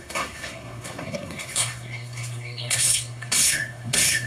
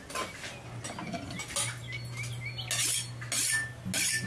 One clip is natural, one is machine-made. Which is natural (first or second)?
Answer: second